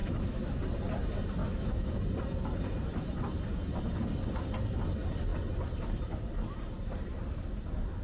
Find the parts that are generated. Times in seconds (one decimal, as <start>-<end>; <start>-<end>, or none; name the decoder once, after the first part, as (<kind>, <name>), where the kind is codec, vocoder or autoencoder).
0.0-0.6 (autoencoder, DAC-VAE); 1.4-1.9